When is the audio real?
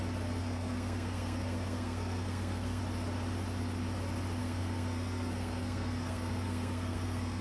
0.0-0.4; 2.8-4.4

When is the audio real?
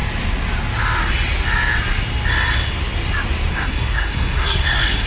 0.0-3.5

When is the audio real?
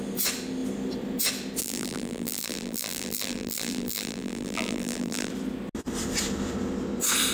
0.0-1.6; 5.3-7.3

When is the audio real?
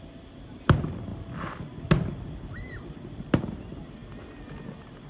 0.0-5.1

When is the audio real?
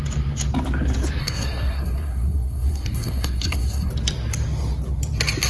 0.0-1.2; 3.9-5.5